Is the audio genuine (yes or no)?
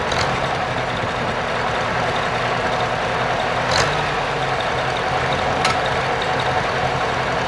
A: yes